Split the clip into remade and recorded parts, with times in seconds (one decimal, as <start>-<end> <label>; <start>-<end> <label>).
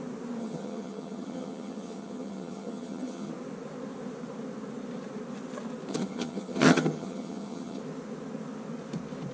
0.0-0.4 recorded; 0.4-3.3 remade; 3.3-5.9 recorded; 5.9-7.8 remade; 7.8-9.3 recorded